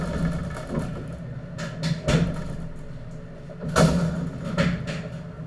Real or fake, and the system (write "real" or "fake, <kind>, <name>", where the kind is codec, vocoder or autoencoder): real